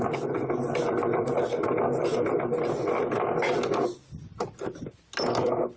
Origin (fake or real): real